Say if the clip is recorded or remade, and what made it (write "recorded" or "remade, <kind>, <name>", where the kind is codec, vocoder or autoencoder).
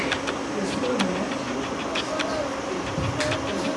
recorded